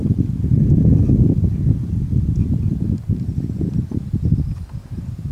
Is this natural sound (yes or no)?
yes